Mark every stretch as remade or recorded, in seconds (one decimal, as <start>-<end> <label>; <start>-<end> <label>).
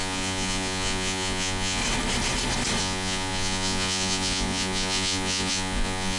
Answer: 0.0-1.8 remade; 1.8-2.8 recorded; 2.8-6.2 remade